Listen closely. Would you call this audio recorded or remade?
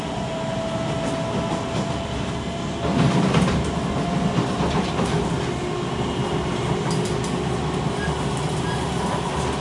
recorded